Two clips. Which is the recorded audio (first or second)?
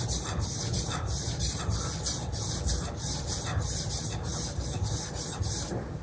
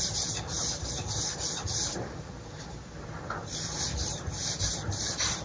first